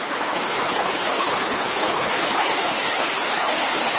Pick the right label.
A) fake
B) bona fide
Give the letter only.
A